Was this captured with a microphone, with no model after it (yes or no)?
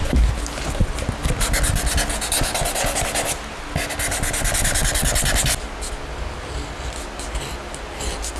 yes